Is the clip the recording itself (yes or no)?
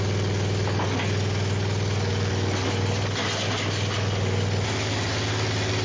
yes